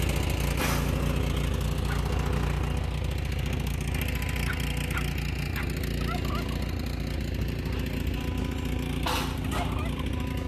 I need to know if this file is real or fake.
real